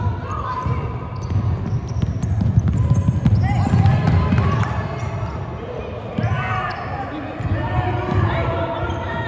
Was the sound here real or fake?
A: real